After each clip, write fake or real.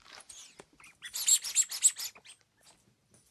real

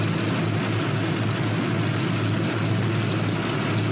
real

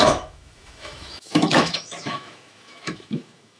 fake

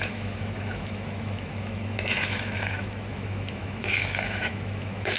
fake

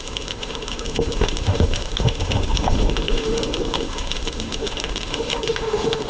fake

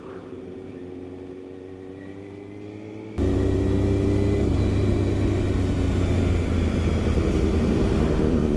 real